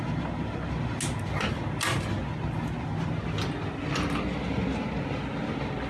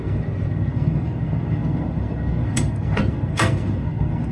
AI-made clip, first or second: second